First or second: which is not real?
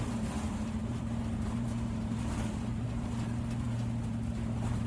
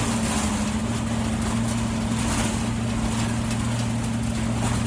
first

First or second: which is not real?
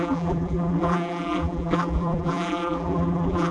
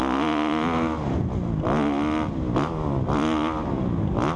first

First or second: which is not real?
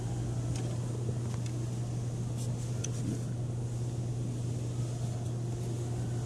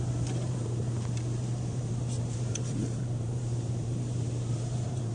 second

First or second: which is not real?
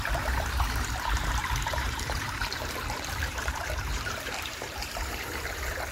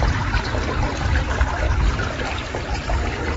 first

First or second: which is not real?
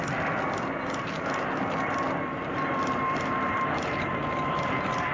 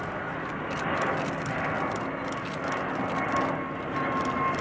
first